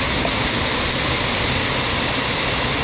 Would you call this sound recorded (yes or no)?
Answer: yes